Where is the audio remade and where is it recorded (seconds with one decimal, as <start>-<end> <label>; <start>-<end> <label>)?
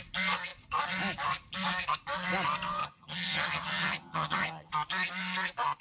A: 0.0-2.8 recorded; 2.8-4.7 remade; 4.7-5.8 recorded